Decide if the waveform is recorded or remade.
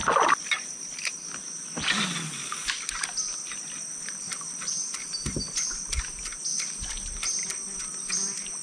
recorded